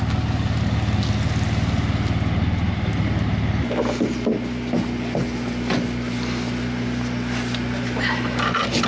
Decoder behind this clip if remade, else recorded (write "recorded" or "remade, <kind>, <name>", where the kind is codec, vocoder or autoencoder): recorded